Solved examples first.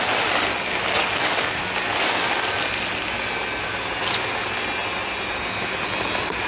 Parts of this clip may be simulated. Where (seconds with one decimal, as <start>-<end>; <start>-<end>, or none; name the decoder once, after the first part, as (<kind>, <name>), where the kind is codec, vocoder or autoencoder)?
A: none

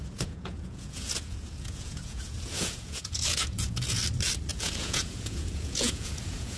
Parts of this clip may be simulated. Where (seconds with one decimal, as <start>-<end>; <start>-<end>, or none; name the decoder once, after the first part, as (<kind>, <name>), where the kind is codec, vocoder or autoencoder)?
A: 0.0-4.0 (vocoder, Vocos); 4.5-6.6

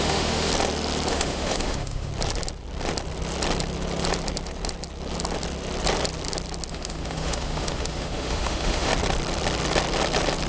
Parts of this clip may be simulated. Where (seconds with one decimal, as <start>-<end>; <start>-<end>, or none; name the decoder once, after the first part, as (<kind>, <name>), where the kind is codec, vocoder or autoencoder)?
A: 0.0-0.5 (autoencoder, DAC-VAE); 1.1-2.1; 6.7-8.9